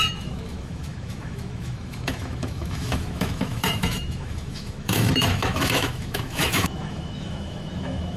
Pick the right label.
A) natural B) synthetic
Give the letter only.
B